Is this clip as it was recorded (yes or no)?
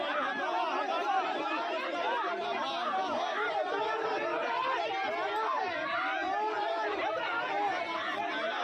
yes